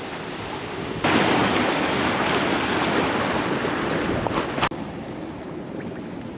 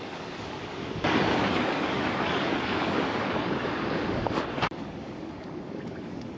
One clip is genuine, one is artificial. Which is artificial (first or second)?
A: second